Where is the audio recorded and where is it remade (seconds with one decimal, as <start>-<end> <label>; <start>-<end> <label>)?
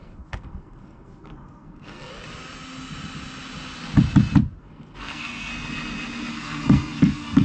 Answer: 0.0-2.1 remade; 2.1-4.6 recorded; 4.6-5.5 remade; 5.5-6.3 recorded; 6.3-7.4 remade